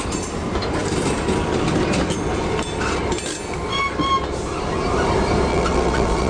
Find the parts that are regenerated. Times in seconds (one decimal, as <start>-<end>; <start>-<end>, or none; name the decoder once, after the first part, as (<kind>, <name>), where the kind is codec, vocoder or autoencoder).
5.5-6.3 (vocoder, WaveNeXt)